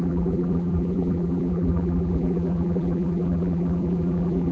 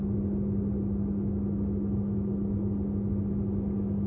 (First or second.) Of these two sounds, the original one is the second